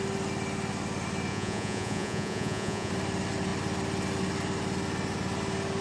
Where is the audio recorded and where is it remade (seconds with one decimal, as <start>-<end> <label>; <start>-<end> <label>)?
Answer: 0.0-1.3 recorded; 1.3-2.9 remade; 2.9-5.8 recorded